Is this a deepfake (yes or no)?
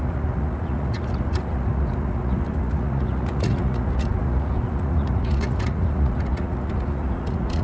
yes